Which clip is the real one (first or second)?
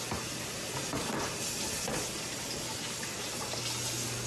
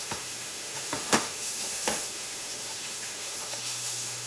first